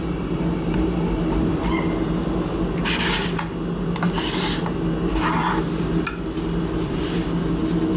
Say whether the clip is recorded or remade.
recorded